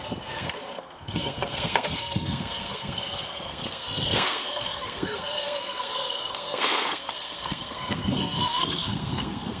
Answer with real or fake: fake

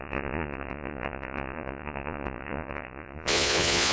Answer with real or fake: fake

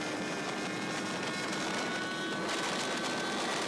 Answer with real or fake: real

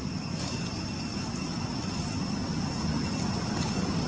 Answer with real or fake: real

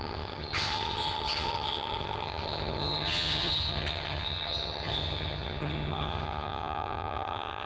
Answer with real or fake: fake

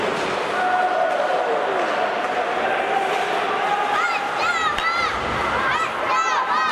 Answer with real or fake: real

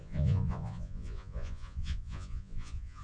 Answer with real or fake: fake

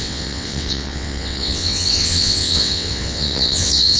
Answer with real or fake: fake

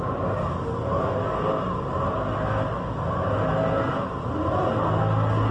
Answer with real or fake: real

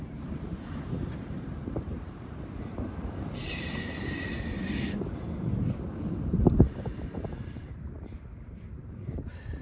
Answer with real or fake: fake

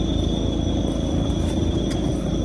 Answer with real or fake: real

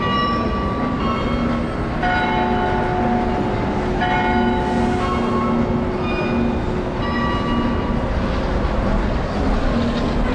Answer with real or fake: real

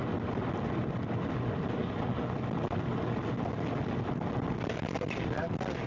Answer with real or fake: real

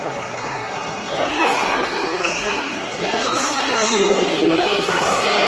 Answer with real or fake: fake